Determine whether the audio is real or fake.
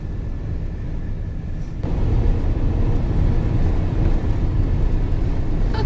real